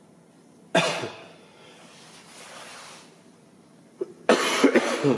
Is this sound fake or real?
real